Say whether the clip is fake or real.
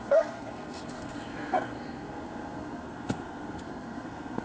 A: fake